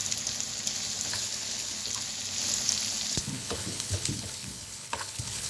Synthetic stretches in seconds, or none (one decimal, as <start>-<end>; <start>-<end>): 1.1-1.8; 3.1-5.5